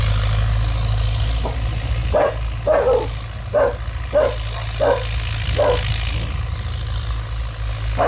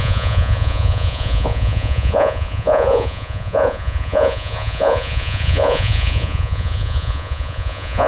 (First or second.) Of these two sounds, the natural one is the first